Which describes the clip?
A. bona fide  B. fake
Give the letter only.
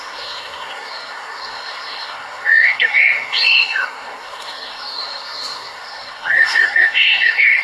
B